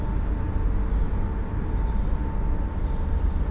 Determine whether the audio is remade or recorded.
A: recorded